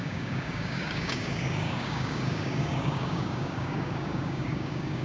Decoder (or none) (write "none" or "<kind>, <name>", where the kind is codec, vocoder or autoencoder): codec, DAC